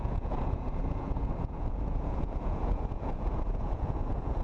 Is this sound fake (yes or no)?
yes